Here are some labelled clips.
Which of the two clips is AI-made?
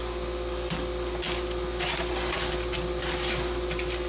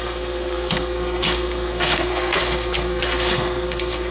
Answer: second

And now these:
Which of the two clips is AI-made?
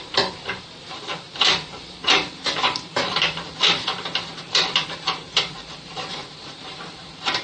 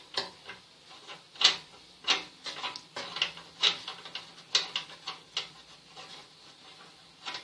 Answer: first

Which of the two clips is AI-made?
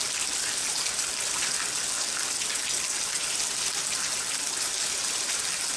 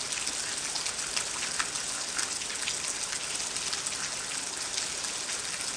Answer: first